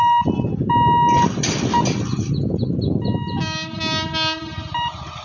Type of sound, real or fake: real